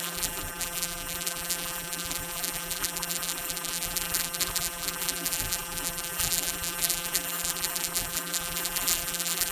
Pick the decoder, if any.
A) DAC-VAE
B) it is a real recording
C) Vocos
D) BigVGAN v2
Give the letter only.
D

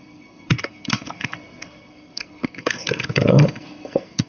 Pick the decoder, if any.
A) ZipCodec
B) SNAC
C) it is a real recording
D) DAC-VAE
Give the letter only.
B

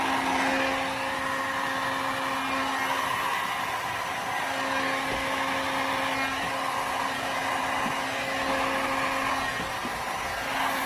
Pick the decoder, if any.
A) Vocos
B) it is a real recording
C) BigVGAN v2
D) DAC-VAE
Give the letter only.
B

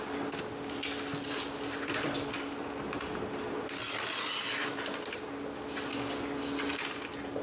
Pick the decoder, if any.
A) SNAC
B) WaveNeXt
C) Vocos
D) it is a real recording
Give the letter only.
D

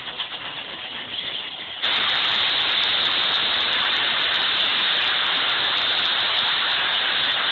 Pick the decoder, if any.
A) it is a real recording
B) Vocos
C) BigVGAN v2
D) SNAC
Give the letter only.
A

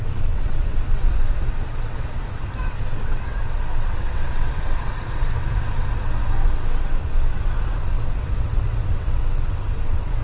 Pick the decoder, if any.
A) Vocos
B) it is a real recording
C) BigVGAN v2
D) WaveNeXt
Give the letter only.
D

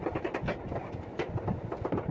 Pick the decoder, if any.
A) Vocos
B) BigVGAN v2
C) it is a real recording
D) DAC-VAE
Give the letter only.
C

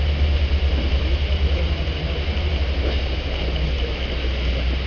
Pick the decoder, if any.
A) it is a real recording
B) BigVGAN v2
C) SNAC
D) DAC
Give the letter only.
A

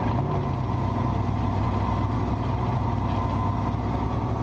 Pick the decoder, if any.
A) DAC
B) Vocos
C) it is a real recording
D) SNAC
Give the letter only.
C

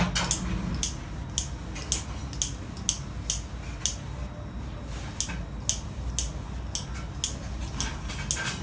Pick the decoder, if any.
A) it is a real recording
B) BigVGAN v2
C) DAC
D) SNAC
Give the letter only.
A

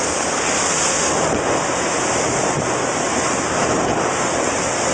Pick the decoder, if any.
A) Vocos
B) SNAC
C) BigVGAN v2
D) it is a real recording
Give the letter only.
D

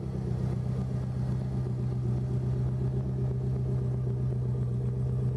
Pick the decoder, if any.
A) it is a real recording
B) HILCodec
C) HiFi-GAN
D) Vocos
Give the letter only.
A